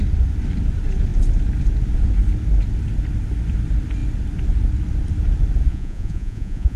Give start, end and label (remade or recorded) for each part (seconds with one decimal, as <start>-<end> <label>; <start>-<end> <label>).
0.0-5.7 recorded; 5.7-6.8 remade